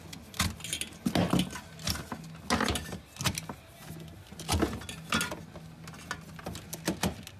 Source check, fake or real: real